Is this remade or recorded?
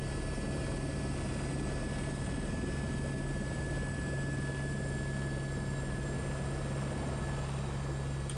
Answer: recorded